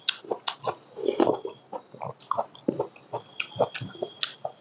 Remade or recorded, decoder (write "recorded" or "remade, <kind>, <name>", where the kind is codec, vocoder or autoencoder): recorded